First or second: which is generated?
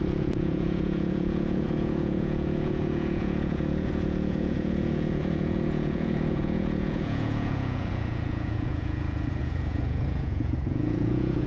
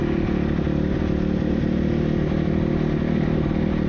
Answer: first